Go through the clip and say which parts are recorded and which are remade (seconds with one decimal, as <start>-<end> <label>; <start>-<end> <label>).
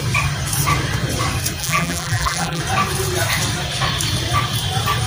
0.0-1.6 recorded; 1.6-2.6 remade; 2.6-5.1 recorded